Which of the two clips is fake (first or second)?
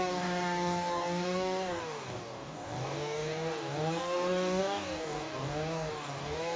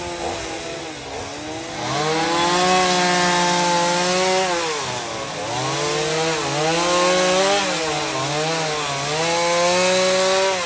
first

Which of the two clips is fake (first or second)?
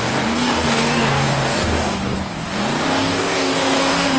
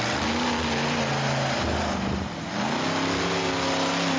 first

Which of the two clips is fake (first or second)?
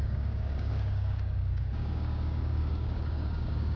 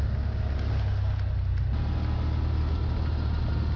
first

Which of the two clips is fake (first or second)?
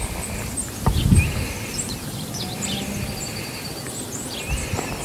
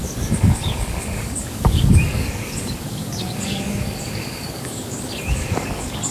second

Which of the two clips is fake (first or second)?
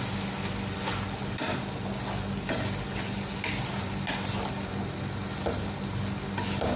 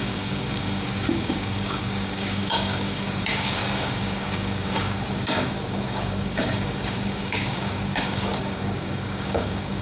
second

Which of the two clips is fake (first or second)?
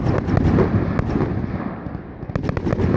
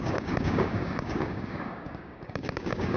second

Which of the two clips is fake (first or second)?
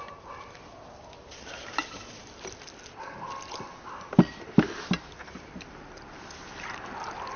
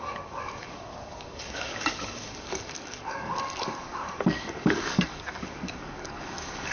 second